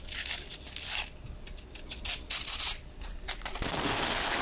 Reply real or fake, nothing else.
real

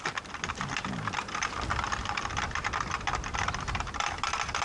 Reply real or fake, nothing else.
real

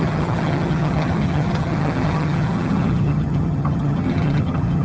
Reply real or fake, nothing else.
fake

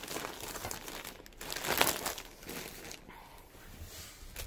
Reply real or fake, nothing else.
real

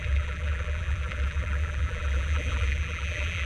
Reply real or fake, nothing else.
fake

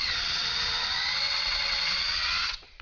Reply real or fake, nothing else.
fake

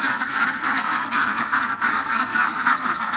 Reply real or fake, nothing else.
fake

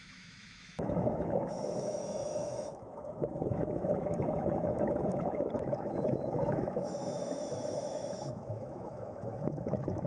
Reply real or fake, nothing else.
fake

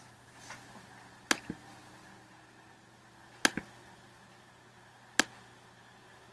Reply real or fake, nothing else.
real